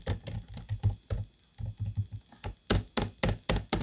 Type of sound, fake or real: real